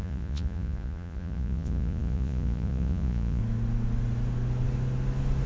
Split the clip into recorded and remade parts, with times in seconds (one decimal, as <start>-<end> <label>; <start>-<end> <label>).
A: 0.0-3.4 remade; 3.4-5.5 recorded